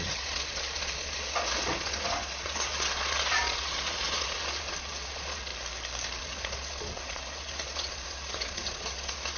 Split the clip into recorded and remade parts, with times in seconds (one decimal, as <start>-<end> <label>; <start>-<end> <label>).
0.0-5.5 remade; 5.5-6.2 recorded; 6.2-9.4 remade